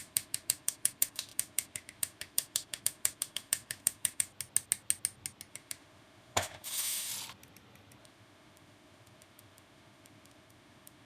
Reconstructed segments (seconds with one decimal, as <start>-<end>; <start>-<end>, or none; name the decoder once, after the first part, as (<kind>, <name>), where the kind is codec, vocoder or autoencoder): 0.0-4.3 (autoencoder, DAC-VAE); 5.5-7.1; 8.0-11.1